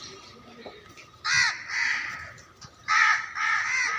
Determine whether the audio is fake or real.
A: real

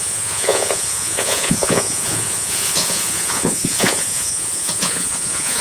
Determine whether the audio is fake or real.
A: fake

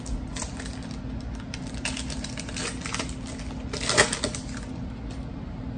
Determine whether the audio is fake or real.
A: real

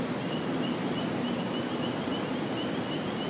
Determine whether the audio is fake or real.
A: real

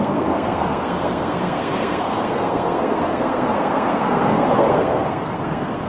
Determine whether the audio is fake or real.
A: fake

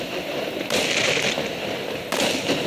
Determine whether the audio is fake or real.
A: fake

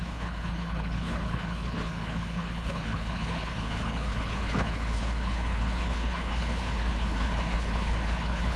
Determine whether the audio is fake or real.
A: fake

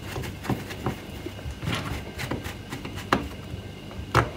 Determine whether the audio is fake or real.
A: real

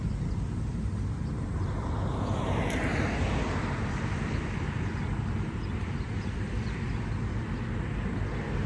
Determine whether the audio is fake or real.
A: real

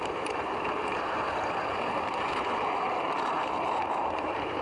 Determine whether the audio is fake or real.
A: fake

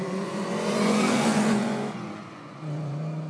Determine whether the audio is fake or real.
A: fake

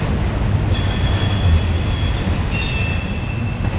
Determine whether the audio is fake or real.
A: real